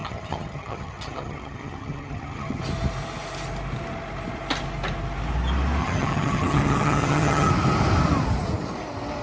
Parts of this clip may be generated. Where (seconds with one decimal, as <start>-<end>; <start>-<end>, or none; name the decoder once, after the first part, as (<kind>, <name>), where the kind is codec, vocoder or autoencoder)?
0.0-2.6 (vocoder, HiFi-GAN); 5.8-7.5